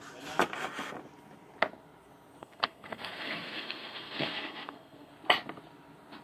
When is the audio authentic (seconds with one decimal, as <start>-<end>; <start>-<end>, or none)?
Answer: 0.0-2.4; 5.1-6.2